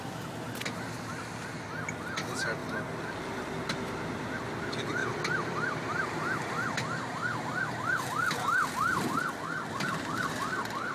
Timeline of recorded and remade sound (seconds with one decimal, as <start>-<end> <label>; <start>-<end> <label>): 0.0-5.0 recorded; 5.0-9.3 remade; 9.3-10.9 recorded